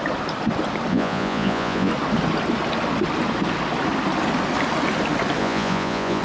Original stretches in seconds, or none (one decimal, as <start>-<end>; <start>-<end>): 0.0-0.9; 1.9-5.4